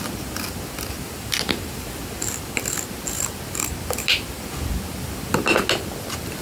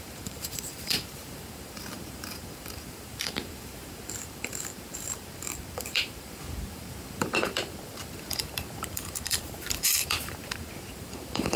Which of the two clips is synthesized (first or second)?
second